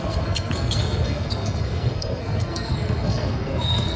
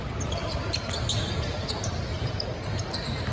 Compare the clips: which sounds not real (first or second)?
first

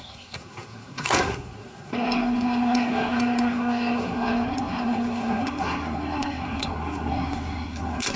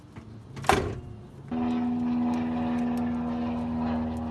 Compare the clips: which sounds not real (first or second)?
first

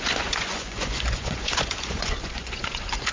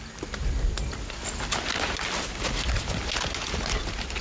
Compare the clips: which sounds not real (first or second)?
first